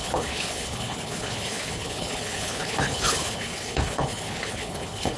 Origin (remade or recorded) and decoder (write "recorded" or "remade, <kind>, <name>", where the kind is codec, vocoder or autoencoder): remade, codec, HILCodec